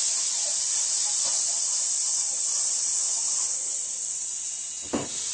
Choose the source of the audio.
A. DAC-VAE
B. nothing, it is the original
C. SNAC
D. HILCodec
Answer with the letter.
B